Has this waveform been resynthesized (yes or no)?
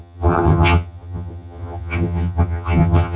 yes